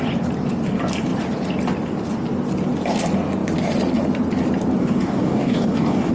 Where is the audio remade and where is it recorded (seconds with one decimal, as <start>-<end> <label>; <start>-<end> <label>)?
0.0-4.8 recorded; 4.8-6.1 remade